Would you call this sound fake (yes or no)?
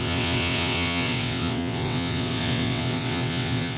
yes